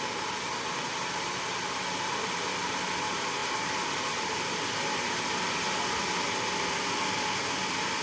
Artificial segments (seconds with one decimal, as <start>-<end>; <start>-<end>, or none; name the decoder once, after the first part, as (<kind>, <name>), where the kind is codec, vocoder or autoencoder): 3.4-4.4 (vocoder, BigVGAN v2)